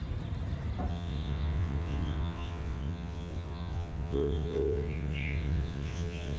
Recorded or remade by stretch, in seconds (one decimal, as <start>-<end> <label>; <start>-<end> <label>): 0.0-0.9 recorded; 0.9-6.4 remade